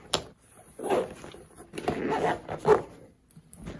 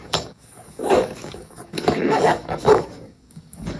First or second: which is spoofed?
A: second